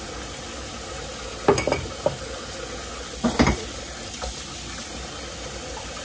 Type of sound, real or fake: real